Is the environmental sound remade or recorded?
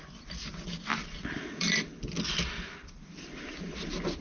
recorded